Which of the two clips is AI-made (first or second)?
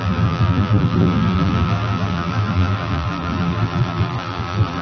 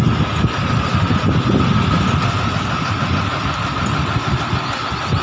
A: first